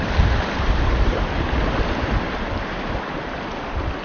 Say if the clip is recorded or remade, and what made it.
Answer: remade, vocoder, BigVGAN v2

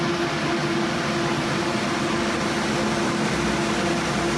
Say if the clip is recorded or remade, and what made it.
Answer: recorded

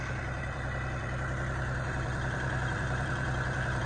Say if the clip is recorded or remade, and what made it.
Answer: remade, vocoder, BigVGAN v2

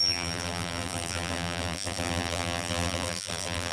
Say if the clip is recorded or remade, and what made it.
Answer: remade, vocoder, BigVGAN v2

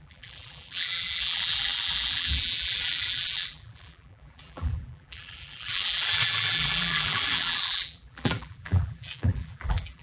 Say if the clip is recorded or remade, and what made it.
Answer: remade, vocoder, BigVGAN v2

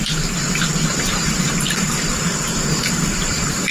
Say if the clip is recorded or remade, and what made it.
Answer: remade, vocoder, BigVGAN v2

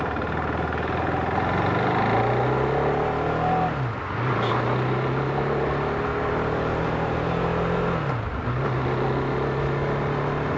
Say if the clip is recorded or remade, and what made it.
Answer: recorded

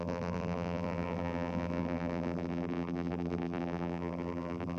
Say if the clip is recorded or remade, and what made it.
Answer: remade, vocoder, BigVGAN v2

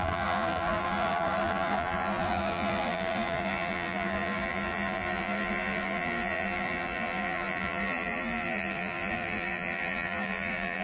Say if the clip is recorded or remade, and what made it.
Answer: remade, vocoder, BigVGAN v2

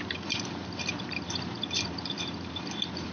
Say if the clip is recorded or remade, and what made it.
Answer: remade, vocoder, BigVGAN v2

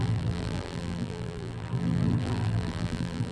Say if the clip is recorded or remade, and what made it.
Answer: remade, vocoder, BigVGAN v2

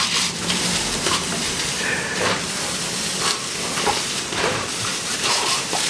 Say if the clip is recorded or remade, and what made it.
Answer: remade, vocoder, BigVGAN v2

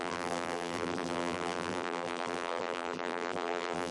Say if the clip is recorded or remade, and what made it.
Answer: remade, vocoder, BigVGAN v2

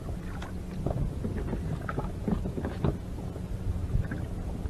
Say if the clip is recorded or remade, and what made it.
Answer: recorded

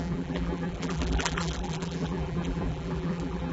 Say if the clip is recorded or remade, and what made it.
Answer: remade, vocoder, BigVGAN v2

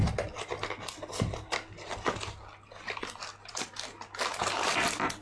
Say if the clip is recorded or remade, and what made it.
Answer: recorded